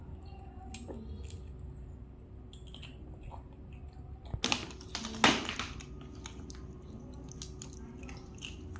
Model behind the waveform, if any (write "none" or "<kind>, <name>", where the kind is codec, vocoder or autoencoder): none